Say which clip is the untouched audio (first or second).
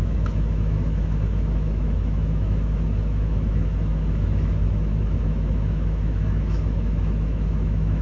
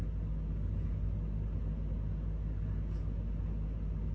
second